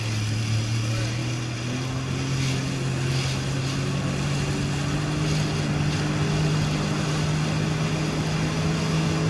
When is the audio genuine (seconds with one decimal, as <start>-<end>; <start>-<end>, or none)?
0.0-9.3